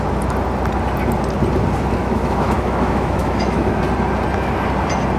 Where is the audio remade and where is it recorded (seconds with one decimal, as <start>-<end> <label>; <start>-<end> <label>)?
0.0-2.0 recorded; 2.0-3.8 remade; 3.8-5.2 recorded